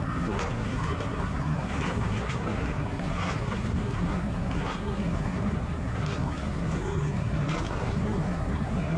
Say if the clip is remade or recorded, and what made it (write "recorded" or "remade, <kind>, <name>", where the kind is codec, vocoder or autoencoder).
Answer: remade, codec, SNAC